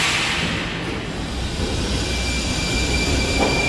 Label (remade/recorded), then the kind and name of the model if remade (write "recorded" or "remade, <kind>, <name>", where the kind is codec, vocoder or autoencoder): recorded